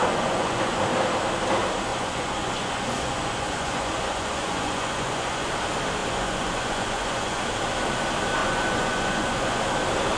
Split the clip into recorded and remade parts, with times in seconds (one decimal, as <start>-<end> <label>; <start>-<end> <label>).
0.0-0.8 remade; 0.8-1.9 recorded; 1.9-5.5 remade; 5.5-6.0 recorded; 6.0-7.4 remade; 7.4-8.4 recorded; 8.4-9.6 remade; 9.6-10.2 recorded